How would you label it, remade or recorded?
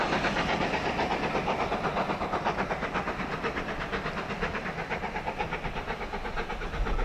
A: recorded